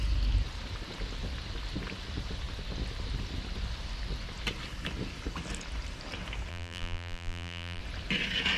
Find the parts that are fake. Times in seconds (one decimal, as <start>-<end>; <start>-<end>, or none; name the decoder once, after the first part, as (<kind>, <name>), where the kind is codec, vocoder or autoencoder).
6.5-7.8 (vocoder, BigVGAN v2)